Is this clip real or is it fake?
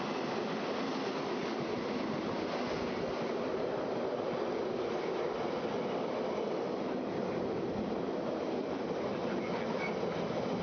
real